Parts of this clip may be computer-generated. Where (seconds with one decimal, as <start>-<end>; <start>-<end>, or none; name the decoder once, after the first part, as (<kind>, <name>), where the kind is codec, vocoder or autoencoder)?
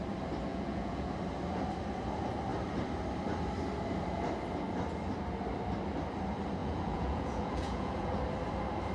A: 0.5-1.1 (vocoder, Vocos); 6.6-8.2